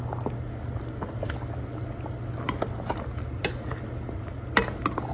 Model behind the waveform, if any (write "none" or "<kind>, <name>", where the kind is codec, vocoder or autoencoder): none